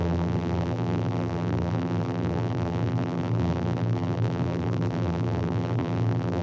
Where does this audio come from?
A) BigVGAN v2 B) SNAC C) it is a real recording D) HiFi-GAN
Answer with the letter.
A